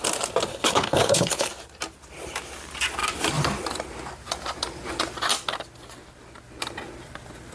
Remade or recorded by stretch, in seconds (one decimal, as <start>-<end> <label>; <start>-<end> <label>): 0.0-0.5 recorded; 0.5-1.5 remade; 1.5-7.5 recorded